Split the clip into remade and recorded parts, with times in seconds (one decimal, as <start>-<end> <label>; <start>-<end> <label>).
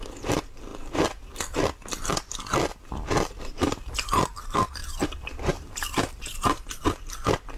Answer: 0.0-4.8 recorded; 4.8-6.8 remade; 6.8-7.6 recorded